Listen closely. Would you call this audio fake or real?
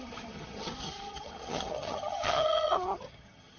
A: fake